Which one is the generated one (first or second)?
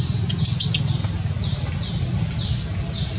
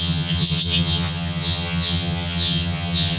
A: second